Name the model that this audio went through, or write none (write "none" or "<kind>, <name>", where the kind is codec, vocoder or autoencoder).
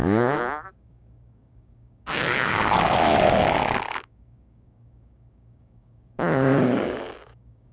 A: codec, DAC